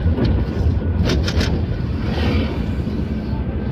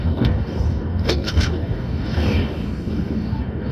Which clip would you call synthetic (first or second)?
second